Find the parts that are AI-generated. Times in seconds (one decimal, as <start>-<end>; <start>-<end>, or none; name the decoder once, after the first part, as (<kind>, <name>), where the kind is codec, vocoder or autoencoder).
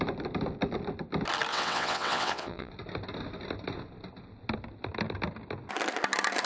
1.5-2.7 (vocoder, WaveNeXt)